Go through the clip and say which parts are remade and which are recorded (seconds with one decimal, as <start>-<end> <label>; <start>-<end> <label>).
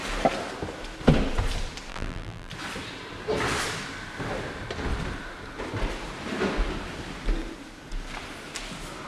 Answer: 0.0-1.9 recorded; 1.9-2.5 remade; 2.5-9.1 recorded